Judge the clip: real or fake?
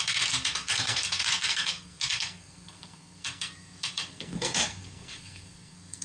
fake